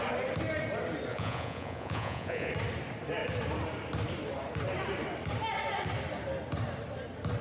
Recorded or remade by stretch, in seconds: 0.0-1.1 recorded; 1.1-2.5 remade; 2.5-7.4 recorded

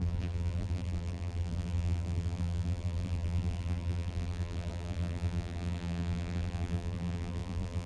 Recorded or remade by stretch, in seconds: 0.0-7.9 remade

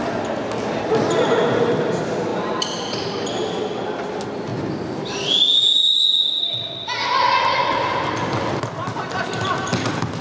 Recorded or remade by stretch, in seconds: 0.0-10.2 recorded

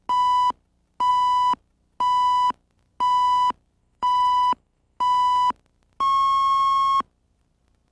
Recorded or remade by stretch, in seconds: 0.0-3.8 recorded; 3.8-5.0 remade; 5.0-7.9 recorded

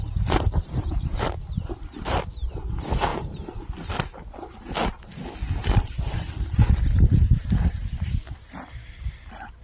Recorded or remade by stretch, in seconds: 0.0-3.1 remade; 3.1-6.3 recorded; 6.3-9.6 remade

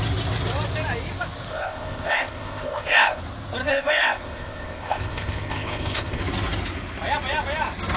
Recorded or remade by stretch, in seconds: 0.0-1.5 recorded; 1.5-3.2 remade; 3.2-3.7 recorded; 3.7-6.2 remade; 6.2-8.0 recorded

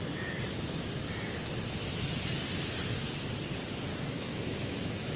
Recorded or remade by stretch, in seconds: 0.0-3.9 recorded; 3.9-5.2 remade

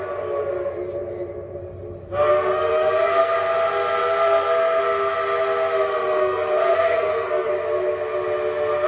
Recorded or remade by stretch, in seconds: 0.0-2.3 recorded; 2.3-3.3 remade; 3.3-4.0 recorded; 4.0-4.8 remade; 4.8-5.9 recorded; 5.9-7.5 remade; 7.5-8.9 recorded